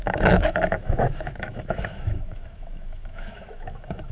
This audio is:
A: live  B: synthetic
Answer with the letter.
B